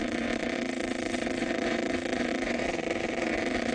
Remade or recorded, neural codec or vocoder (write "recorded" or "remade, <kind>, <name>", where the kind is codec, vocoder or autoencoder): remade, vocoder, WaveNeXt